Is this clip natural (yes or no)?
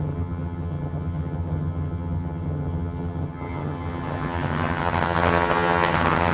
no